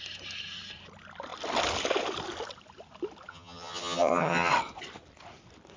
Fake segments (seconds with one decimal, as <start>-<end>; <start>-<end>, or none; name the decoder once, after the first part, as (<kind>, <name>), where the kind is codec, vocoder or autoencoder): 3.3-4.5 (vocoder, HiFi-GAN)